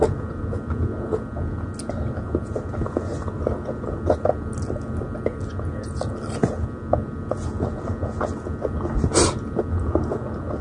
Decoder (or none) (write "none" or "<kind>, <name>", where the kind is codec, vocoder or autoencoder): none